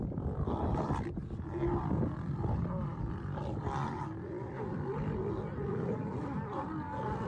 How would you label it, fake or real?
real